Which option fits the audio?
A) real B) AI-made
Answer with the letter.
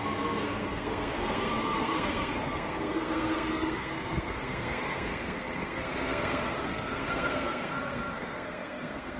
B